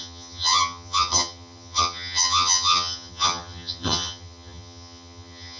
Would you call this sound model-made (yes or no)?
yes